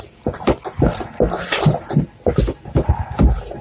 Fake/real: real